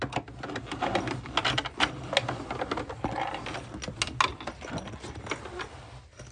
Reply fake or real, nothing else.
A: real